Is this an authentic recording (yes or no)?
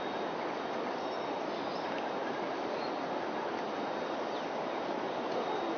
yes